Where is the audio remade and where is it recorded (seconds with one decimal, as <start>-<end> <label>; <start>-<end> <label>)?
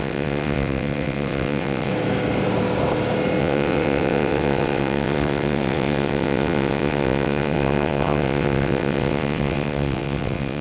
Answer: 0.0-1.9 remade; 1.9-3.4 recorded; 3.4-10.6 remade